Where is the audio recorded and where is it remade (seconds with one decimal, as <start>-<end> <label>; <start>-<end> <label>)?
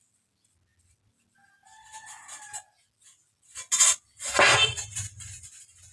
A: 0.0-5.9 recorded